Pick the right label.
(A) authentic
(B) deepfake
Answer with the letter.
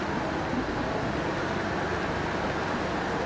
A